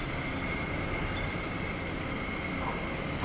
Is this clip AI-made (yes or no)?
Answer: no